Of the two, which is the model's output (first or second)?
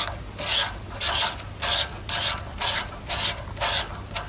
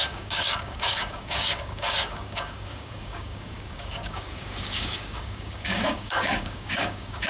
second